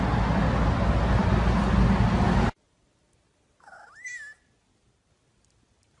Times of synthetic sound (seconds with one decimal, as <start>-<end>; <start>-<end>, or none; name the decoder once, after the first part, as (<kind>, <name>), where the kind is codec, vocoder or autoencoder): none